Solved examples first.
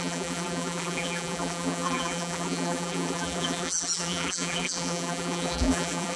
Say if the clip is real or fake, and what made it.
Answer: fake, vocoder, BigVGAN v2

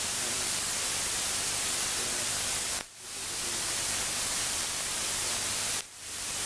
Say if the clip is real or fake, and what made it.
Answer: fake, vocoder, BigVGAN v2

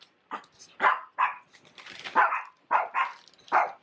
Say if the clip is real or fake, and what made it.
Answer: real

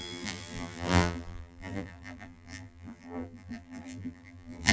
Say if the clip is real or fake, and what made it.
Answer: fake, vocoder, BigVGAN v2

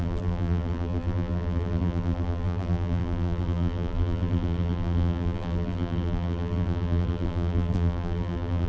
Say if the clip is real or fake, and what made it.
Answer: fake, vocoder, BigVGAN v2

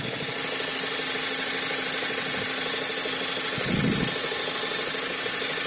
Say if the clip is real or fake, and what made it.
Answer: real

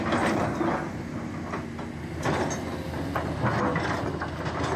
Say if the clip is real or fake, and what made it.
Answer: real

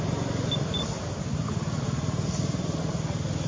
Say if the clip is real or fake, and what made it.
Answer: real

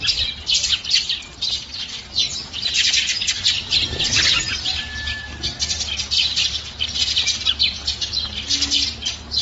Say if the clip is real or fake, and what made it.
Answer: real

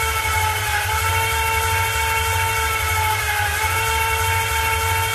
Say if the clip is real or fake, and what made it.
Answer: real